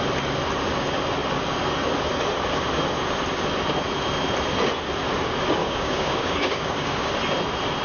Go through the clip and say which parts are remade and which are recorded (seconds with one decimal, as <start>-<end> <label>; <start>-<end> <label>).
0.0-5.6 recorded; 5.6-7.1 remade; 7.1-7.8 recorded